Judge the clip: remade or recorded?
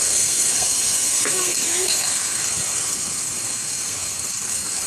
remade